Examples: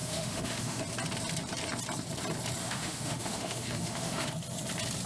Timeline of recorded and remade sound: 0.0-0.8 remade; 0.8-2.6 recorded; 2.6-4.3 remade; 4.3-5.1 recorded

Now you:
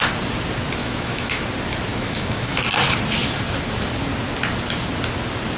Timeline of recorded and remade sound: 0.0-0.8 recorded; 0.8-1.4 remade; 1.4-1.9 recorded; 1.9-2.6 remade; 2.6-5.6 recorded

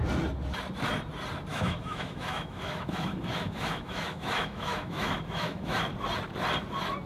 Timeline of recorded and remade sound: 0.0-1.5 recorded; 1.5-5.8 remade; 5.8-7.1 recorded